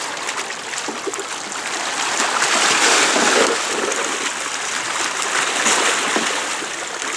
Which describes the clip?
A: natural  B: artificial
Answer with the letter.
A